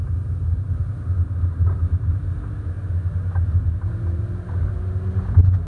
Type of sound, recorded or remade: recorded